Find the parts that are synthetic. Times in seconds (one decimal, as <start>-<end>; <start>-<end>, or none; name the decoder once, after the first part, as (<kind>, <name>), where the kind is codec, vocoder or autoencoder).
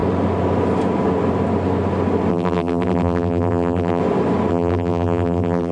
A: 2.3-4.0 (vocoder, BigVGAN v2); 4.5-5.7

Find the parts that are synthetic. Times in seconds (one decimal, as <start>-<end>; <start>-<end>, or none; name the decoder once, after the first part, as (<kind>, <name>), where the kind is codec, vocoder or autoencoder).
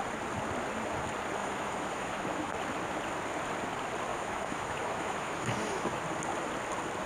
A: 1.4-2.5 (autoencoder, DAC-VAE); 4.1-6.0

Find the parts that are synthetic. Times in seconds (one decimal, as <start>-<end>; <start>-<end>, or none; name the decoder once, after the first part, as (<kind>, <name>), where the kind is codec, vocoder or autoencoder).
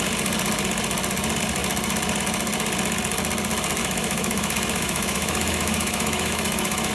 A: 3.8-6.9 (autoencoder, DAC-VAE)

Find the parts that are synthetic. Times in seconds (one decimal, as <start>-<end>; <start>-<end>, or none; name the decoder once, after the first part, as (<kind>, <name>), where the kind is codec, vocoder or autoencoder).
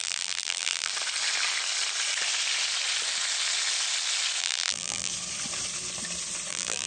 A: 0.0-0.9 (vocoder, BigVGAN v2); 4.4-5.1; 6.5-6.9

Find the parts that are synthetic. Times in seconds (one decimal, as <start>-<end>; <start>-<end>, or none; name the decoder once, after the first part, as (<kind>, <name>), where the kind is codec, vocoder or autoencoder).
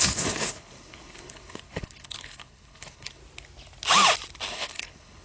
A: 0.0-3.2 (codec, HILCodec); 4.5-5.2